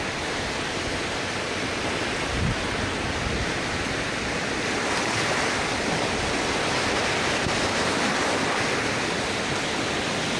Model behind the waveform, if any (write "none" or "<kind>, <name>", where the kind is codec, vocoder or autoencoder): none